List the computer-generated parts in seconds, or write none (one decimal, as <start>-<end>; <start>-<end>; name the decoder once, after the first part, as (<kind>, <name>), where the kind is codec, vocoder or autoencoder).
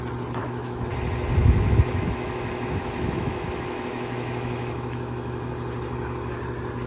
0.4-0.9 (autoencoder, DAC-VAE); 1.4-5.5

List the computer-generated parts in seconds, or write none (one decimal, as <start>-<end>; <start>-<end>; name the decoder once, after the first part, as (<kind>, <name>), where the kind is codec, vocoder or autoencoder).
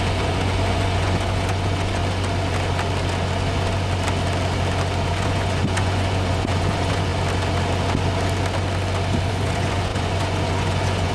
0.0-2.0 (vocoder, Vocos); 5.0-7.1; 9.3-11.1